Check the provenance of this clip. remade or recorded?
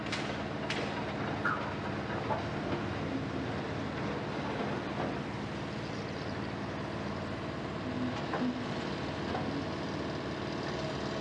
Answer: recorded